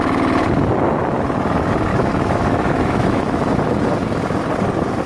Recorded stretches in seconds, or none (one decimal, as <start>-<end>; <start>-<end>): 0.0-1.9; 3.5-5.1